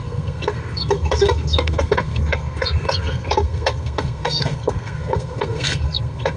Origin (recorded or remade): remade